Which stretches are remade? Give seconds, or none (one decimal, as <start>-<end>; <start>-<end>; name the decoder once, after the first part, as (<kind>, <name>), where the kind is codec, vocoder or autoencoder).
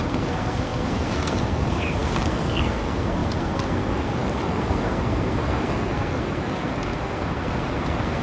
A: 0.0-8.2 (codec, SNAC)